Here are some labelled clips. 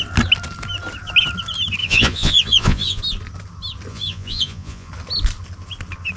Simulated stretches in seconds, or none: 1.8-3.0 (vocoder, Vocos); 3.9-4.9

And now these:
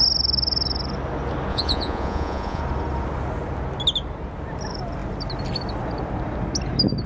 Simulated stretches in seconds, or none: 1.5-2.6 (vocoder, Vocos)

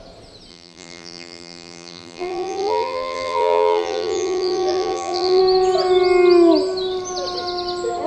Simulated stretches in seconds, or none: 0.5-5.4 (vocoder, BigVGAN v2)

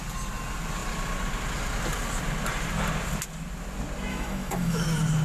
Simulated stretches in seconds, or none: 4.1-4.8 (autoencoder, DAC-VAE)

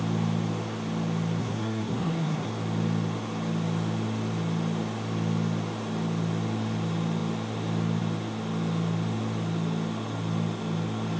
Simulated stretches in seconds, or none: 1.4-2.5 (codec, SNAC)